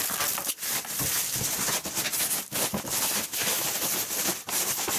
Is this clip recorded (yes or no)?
no